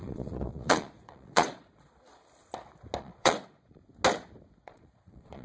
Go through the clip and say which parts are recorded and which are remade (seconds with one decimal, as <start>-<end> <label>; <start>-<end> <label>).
0.0-2.4 remade; 2.4-3.0 recorded; 3.0-3.8 remade; 3.8-4.6 recorded; 4.6-5.4 remade